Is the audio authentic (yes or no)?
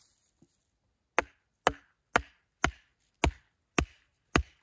yes